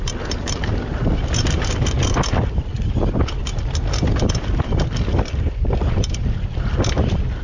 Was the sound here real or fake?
real